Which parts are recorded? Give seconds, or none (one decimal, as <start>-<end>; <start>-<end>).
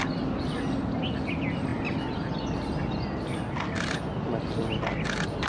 0.0-5.5